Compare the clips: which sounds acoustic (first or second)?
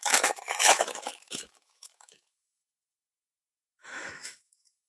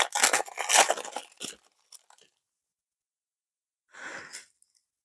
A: second